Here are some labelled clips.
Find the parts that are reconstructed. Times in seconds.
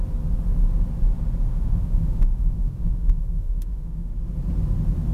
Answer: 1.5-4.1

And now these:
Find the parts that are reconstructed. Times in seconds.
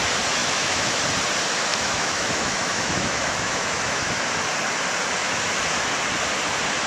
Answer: 0.4-1.0; 1.7-4.0; 5.2-5.9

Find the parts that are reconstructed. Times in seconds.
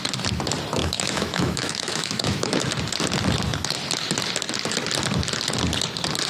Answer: 0.8-2.7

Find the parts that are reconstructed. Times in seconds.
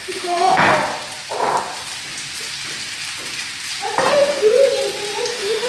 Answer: 0.0-0.7; 4.1-4.6; 5.3-5.7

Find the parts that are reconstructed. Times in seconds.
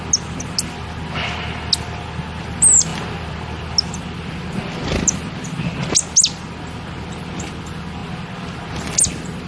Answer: none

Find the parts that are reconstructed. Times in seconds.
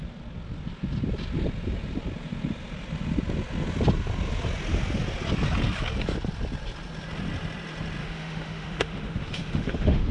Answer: 8.0-10.1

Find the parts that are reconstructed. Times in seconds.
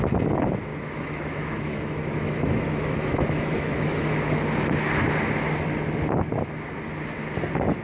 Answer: 0.7-4.2